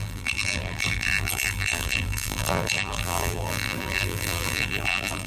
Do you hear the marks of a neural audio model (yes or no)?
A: yes